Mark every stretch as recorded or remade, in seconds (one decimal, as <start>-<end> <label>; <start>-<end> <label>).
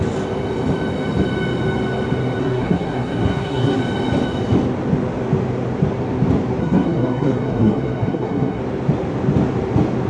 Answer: 0.0-2.4 recorded; 2.4-3.8 remade; 3.8-6.6 recorded; 6.6-8.6 remade; 8.6-10.1 recorded